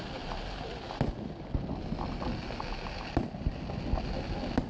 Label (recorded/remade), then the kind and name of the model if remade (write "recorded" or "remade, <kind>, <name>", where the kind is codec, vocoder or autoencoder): recorded